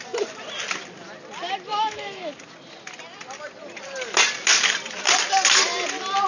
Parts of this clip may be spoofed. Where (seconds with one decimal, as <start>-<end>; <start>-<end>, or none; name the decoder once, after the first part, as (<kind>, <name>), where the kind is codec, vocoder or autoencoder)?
1.7-2.3 (autoencoder, DAC-VAE)